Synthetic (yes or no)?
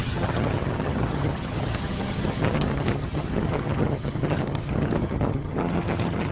yes